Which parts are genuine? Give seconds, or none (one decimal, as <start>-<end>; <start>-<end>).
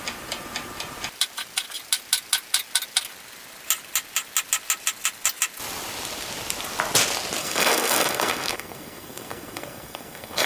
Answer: 0.0-7.4